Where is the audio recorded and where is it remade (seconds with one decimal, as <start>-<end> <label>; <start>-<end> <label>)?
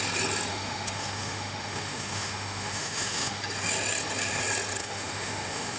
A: 0.0-0.5 recorded; 0.5-3.4 remade; 3.4-4.8 recorded; 4.8-5.8 remade